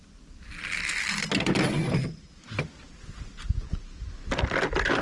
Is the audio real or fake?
real